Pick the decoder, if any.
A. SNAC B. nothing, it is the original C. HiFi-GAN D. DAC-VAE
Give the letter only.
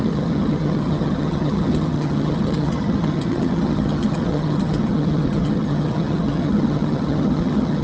C